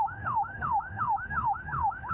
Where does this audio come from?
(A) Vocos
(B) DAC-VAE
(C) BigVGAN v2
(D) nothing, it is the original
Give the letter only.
B